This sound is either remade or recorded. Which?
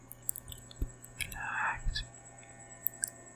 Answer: recorded